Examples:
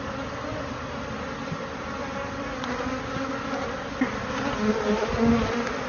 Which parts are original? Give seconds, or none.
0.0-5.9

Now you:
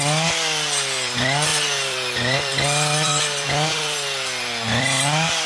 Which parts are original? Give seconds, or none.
none

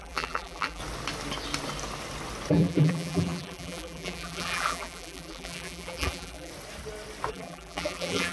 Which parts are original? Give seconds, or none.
0.8-2.5; 6.5-7.3